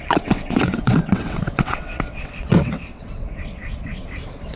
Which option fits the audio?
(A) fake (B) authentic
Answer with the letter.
A